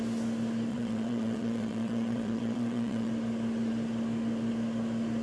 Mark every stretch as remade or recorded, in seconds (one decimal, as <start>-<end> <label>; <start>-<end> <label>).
0.0-0.7 recorded; 0.7-3.1 remade; 3.1-5.2 recorded